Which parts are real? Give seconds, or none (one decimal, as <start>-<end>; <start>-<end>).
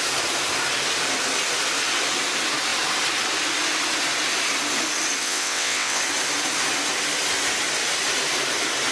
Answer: 0.0-5.2; 6.0-8.9